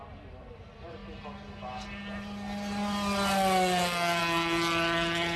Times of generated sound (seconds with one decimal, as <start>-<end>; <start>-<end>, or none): none